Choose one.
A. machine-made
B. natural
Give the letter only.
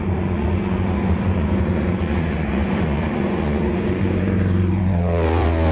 A